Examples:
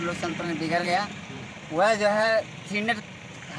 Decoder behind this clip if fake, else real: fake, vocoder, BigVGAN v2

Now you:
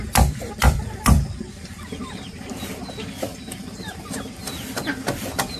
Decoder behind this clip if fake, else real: fake, vocoder, BigVGAN v2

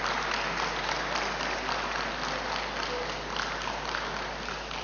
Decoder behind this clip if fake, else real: real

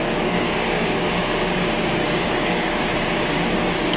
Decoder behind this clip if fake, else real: fake, codec, DAC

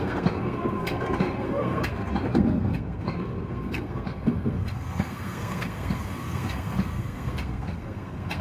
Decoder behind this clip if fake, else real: fake, codec, SNAC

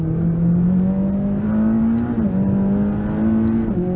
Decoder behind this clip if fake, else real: real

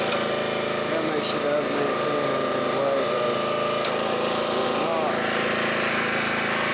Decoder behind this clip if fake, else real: real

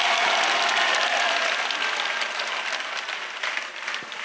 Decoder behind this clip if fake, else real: real